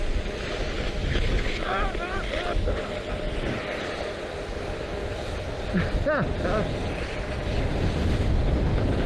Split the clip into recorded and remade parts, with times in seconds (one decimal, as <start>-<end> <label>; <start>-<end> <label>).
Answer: 0.0-1.1 recorded; 1.1-1.6 remade; 1.6-9.1 recorded